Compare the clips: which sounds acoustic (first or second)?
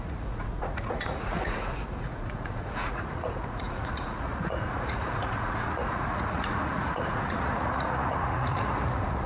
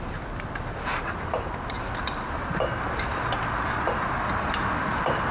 second